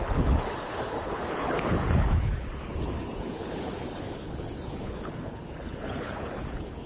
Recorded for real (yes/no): no